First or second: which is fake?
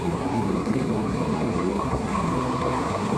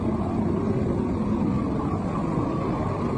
first